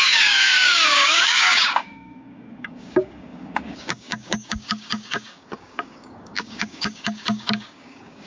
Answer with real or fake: fake